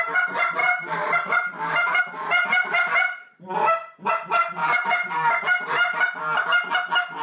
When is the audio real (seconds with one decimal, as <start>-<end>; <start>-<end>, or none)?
0.0-0.6; 2.0-4.6; 6.2-7.2